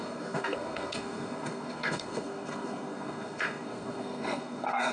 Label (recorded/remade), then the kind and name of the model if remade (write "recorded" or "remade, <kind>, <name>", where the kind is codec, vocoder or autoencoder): remade, codec, SNAC